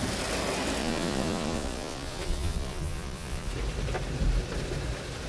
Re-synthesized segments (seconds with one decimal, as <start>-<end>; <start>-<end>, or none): 0.8-3.5

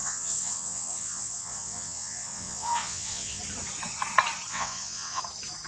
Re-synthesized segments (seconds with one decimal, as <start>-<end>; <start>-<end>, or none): 0.0-3.4; 4.5-5.2